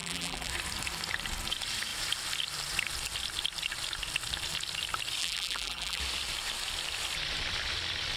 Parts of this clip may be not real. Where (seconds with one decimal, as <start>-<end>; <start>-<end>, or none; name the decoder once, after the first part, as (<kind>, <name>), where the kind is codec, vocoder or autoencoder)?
0.0-0.5 (vocoder, BigVGAN v2); 5.2-6.0